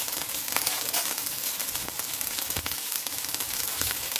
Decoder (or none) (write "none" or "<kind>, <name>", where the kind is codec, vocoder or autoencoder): codec, DAC